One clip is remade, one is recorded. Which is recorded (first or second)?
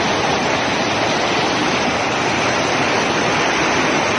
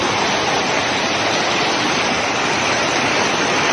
first